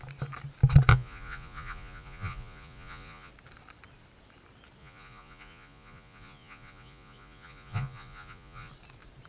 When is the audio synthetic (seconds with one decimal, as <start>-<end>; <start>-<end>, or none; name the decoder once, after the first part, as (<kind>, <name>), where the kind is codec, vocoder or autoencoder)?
0.9-3.3 (vocoder, Vocos); 4.8-8.7